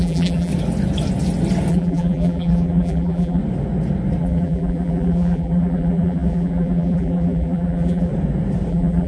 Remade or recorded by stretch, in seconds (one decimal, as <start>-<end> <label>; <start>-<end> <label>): 0.0-0.5 remade; 0.5-1.7 recorded; 1.7-3.4 remade; 3.4-4.2 recorded; 4.2-8.1 remade; 8.1-8.7 recorded; 8.7-9.1 remade